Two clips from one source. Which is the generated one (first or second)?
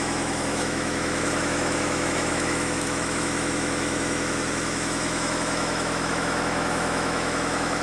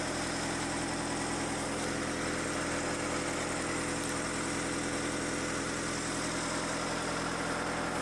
first